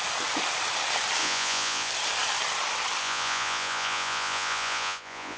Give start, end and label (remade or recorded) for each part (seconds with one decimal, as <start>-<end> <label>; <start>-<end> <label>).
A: 0.0-1.2 recorded; 1.2-1.9 remade; 1.9-3.0 recorded; 3.0-5.4 remade